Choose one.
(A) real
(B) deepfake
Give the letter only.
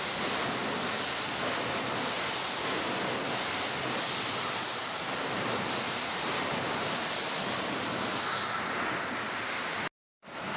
A